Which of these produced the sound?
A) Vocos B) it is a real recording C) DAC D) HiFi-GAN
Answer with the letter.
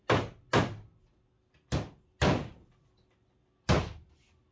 B